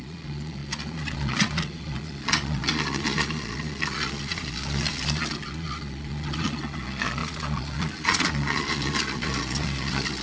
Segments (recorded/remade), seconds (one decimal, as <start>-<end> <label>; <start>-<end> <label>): 0.0-10.2 remade